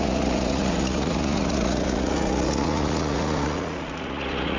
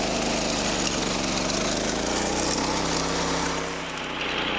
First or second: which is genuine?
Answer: second